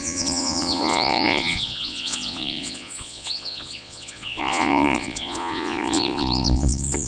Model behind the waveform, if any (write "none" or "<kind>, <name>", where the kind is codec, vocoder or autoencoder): vocoder, Vocos